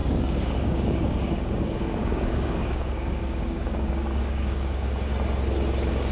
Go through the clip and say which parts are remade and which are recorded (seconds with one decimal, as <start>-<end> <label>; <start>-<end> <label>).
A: 0.0-5.1 remade; 5.1-6.1 recorded